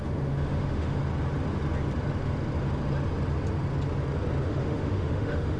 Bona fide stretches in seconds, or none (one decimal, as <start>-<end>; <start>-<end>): 1.0-4.4

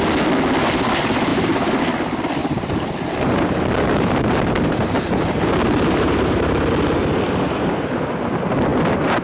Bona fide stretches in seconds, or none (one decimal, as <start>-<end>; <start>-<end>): 0.0-1.3; 1.8-2.4; 6.7-9.2

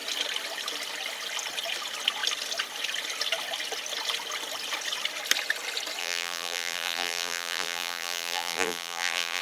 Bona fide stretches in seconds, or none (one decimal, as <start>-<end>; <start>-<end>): 0.0-6.0

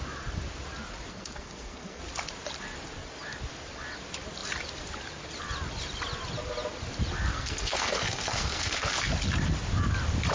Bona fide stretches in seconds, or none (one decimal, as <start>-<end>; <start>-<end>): 0.0-1.1; 2.0-7.3; 9.1-10.3

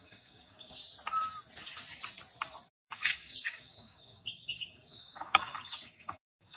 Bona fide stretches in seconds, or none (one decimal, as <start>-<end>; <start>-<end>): 0.8-2.8

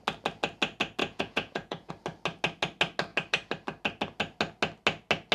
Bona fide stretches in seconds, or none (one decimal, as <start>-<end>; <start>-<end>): 0.0-1.0; 1.9-5.3

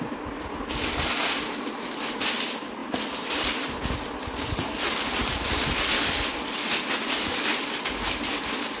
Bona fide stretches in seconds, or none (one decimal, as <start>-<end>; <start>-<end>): 0.0-8.8